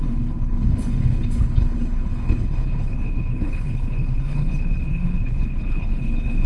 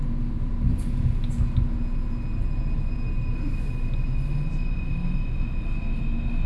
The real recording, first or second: second